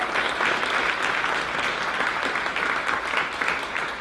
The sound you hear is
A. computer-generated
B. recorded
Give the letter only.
B